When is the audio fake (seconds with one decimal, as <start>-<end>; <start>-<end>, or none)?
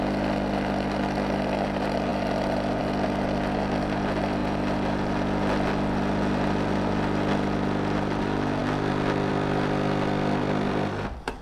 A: none